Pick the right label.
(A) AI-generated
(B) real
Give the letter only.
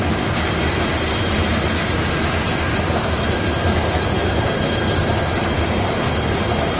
B